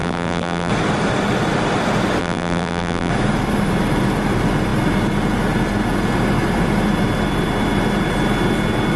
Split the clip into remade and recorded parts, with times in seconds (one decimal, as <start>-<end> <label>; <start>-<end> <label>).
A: 0.0-0.7 remade; 0.7-2.2 recorded; 2.2-3.1 remade; 3.1-9.0 recorded